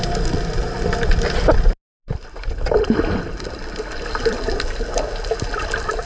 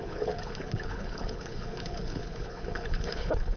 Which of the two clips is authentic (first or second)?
first